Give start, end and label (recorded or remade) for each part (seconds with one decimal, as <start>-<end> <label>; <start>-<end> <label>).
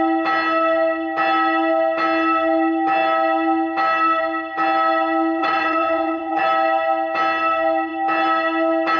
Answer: 0.0-5.4 recorded; 5.4-6.4 remade; 6.4-9.0 recorded